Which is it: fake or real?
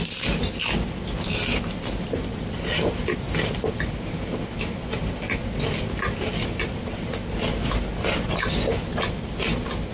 real